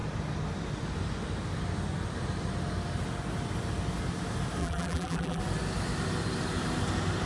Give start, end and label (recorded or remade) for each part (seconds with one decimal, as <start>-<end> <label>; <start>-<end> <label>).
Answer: 0.0-4.6 recorded; 4.6-5.4 remade; 5.4-7.3 recorded